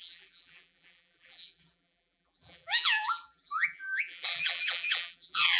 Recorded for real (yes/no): no